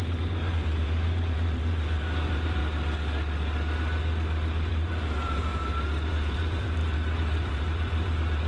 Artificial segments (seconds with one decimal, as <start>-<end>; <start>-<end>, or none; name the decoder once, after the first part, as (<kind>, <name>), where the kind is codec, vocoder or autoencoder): 0.0-2.6 (vocoder, BigVGAN v2); 4.7-5.5; 6.1-8.5